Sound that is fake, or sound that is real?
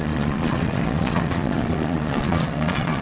fake